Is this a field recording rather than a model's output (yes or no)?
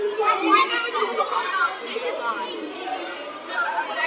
yes